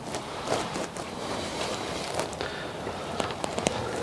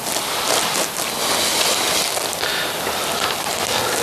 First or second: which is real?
second